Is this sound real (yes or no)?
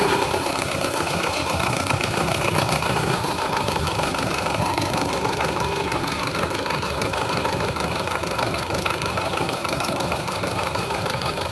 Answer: no